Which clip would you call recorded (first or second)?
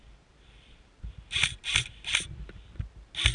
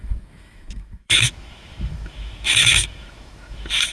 first